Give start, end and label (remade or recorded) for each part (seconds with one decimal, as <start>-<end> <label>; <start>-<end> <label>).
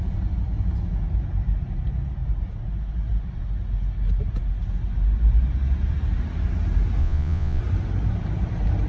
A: 0.0-7.0 recorded; 7.0-7.6 remade; 7.6-8.9 recorded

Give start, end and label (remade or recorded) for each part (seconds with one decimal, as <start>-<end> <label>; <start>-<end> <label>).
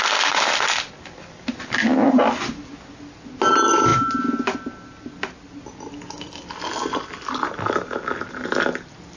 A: 0.0-9.2 recorded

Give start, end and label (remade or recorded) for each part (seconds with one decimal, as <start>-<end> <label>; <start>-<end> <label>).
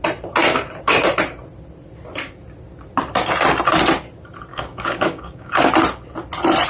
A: 0.0-4.5 recorded; 4.5-5.7 remade; 5.7-6.7 recorded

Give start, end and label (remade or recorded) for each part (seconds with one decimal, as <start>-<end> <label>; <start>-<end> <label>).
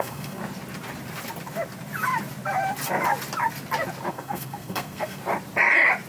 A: 0.0-0.4 remade; 0.4-4.1 recorded; 4.1-5.2 remade; 5.2-6.1 recorded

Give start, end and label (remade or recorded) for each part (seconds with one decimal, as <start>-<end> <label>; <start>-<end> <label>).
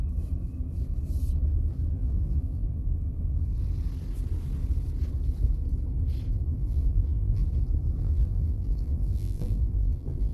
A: 0.0-1.9 recorded; 1.9-2.9 remade; 2.9-6.3 recorded; 6.3-7.4 remade; 7.4-8.0 recorded; 8.0-10.3 remade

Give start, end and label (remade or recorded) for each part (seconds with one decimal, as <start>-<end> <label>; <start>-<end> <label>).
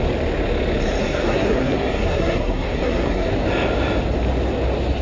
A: 0.0-1.0 recorded; 1.0-3.3 remade; 3.3-5.0 recorded